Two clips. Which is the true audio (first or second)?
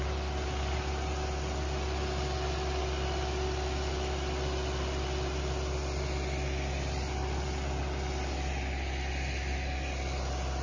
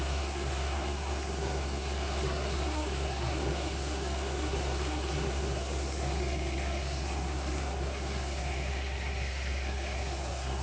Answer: first